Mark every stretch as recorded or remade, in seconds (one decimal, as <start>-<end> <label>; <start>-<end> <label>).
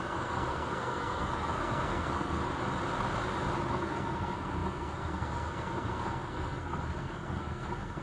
0.0-2.4 remade; 2.4-3.7 recorded; 3.7-8.0 remade